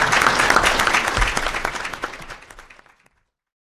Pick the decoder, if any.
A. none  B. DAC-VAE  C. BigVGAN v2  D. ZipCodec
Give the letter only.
A